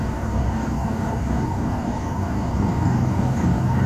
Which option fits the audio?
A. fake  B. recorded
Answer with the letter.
A